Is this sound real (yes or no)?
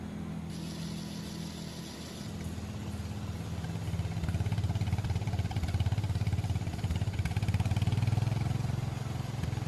yes